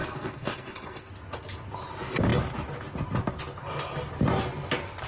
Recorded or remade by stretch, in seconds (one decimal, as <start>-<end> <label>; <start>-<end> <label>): 0.0-1.1 remade; 1.1-5.1 recorded